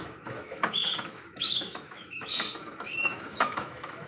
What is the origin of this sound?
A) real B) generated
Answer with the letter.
B